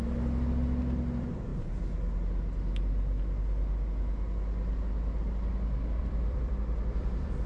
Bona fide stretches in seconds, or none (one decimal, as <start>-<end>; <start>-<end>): 1.5-6.0